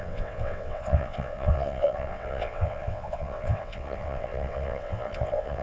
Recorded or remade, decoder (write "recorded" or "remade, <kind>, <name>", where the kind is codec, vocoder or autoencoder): remade, vocoder, WaveNeXt